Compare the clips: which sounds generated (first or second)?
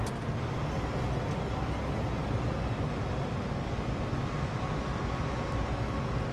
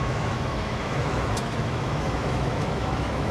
second